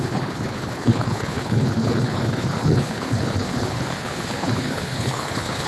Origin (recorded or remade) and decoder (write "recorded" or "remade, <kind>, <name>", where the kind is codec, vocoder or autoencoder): remade, codec, HILCodec